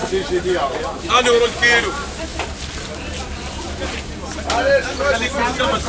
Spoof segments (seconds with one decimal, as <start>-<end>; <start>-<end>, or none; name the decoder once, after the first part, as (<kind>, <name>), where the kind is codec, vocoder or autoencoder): none

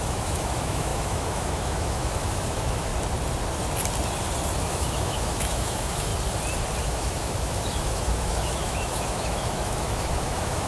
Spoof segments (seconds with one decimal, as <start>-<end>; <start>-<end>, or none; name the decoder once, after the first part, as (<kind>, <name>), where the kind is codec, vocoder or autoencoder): 0.0-2.9 (autoencoder, DAC-VAE); 4.6-6.1; 6.8-10.7